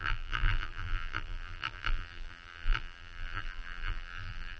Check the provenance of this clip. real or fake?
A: fake